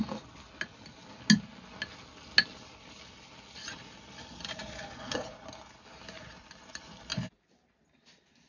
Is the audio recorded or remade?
recorded